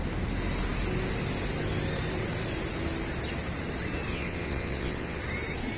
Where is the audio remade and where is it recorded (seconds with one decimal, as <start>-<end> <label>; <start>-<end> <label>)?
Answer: 0.0-4.1 recorded; 4.1-5.2 remade; 5.2-5.8 recorded